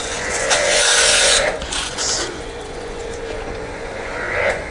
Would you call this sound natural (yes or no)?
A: no